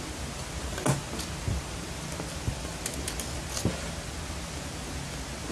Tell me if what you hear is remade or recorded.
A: recorded